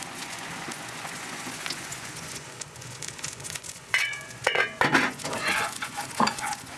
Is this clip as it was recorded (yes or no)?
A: no